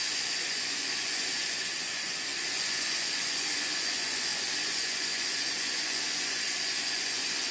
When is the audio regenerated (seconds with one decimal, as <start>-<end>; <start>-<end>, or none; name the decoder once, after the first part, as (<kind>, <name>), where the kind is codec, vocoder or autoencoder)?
0.0-7.5 (vocoder, Vocos)